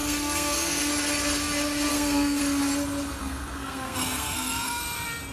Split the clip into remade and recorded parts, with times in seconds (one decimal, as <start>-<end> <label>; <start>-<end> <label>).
0.0-0.9 remade; 0.9-1.9 recorded; 1.9-2.4 remade; 2.4-3.2 recorded; 3.2-4.8 remade; 4.8-5.3 recorded